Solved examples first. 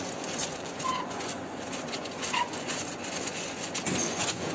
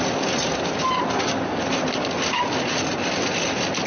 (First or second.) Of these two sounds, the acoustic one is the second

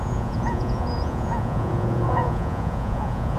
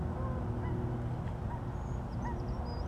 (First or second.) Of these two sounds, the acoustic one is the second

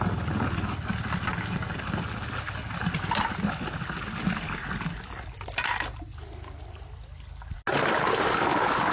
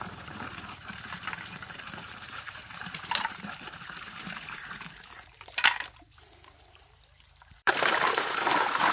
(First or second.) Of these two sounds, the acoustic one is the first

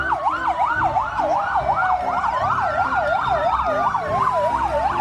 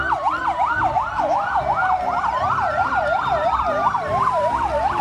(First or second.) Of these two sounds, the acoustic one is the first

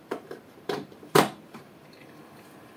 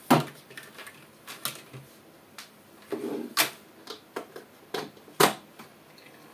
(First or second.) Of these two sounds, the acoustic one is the second